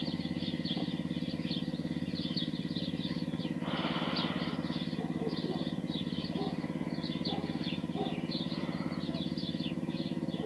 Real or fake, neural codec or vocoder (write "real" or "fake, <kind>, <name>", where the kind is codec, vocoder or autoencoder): real